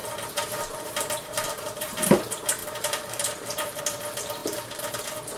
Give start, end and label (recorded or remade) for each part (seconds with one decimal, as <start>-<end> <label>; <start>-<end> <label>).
0.0-2.2 remade; 2.2-2.6 recorded; 2.6-3.8 remade; 3.8-4.4 recorded; 4.4-5.0 remade; 5.0-5.4 recorded

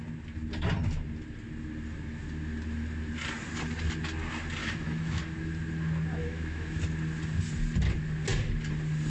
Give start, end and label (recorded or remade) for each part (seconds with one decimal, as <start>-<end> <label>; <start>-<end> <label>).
0.0-4.6 recorded; 4.6-5.2 remade; 5.2-6.2 recorded; 6.2-6.8 remade; 6.8-9.1 recorded

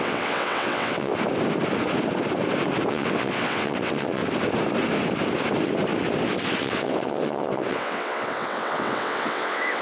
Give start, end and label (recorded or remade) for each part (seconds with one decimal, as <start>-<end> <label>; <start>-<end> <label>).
0.0-1.1 remade; 1.1-2.9 recorded; 2.9-4.2 remade; 4.2-6.6 recorded; 6.6-9.8 remade

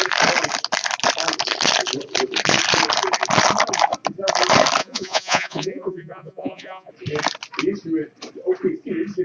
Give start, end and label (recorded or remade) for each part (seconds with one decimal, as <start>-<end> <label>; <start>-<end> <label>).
0.0-4.8 recorded; 4.8-6.9 remade; 6.9-9.2 recorded

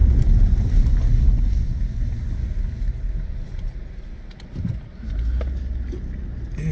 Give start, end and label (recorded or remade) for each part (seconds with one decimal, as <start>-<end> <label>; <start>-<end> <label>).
0.0-6.7 recorded

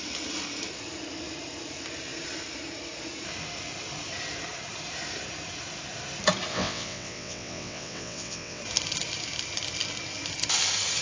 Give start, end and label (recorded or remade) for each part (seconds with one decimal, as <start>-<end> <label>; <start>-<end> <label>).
0.0-6.5 recorded; 6.5-8.6 remade; 8.6-11.0 recorded